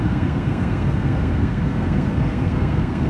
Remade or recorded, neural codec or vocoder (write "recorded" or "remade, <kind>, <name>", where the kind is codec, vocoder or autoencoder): remade, codec, SNAC